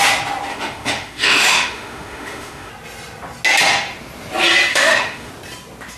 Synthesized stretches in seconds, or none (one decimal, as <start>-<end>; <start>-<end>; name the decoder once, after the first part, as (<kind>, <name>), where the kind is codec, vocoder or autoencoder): 0.5-2.7 (autoencoder, DAC-VAE); 4.7-5.3